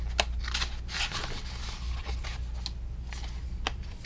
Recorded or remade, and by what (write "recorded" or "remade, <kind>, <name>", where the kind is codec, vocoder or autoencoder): recorded